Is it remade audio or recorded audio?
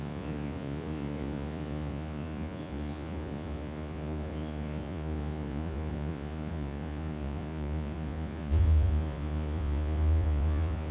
remade